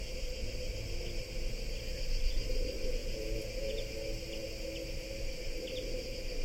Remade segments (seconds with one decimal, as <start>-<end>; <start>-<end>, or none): 3.0-3.8